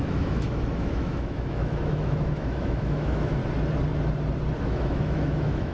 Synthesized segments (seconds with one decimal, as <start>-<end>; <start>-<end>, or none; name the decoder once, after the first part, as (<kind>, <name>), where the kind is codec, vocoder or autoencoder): 0.0-3.4 (autoencoder, DAC-VAE); 4.6-5.7